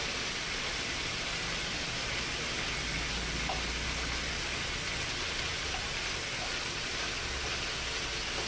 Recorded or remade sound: recorded